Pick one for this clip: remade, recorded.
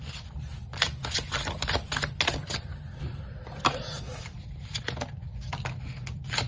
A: recorded